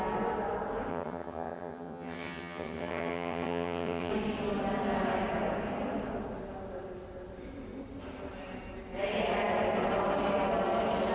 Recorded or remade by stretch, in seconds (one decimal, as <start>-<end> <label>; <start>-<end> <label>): 0.0-0.9 recorded; 0.9-4.1 remade; 4.1-11.1 recorded